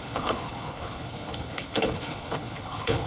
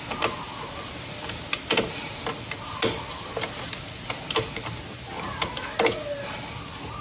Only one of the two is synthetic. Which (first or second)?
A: first